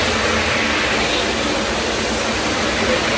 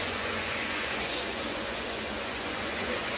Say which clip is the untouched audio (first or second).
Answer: first